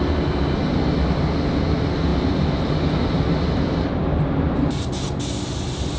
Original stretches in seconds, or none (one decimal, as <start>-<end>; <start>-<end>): 0.0-6.0